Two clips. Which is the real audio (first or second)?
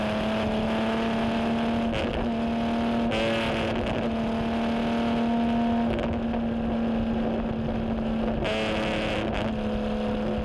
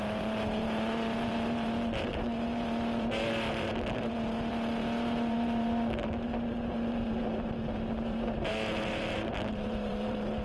first